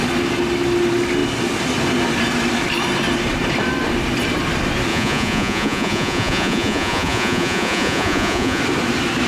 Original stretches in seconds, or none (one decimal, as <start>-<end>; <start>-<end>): 0.0-4.9; 8.6-9.3